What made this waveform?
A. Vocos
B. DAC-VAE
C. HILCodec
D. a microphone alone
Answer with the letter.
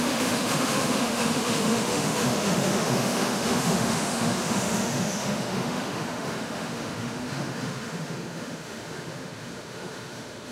B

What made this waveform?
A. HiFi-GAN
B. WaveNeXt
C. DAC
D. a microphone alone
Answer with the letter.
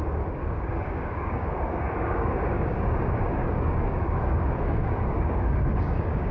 C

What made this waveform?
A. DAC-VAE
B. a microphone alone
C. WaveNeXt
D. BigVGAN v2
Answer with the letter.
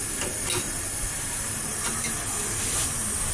B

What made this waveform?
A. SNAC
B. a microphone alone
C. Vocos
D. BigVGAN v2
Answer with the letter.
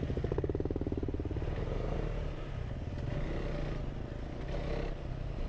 B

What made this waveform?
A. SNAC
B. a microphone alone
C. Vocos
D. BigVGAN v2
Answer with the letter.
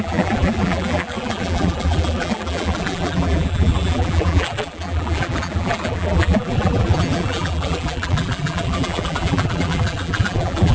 D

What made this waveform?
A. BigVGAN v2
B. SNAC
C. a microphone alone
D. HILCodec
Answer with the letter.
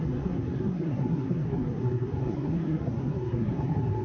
B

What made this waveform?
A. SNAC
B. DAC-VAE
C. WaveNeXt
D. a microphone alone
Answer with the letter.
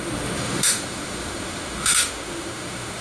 B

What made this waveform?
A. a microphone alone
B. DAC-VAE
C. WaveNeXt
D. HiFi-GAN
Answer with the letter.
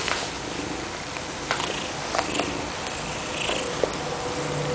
A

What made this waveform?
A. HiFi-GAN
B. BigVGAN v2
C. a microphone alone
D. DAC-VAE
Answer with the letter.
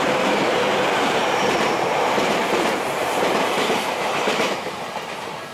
B